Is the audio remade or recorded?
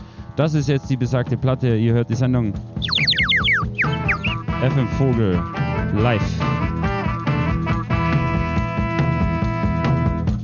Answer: recorded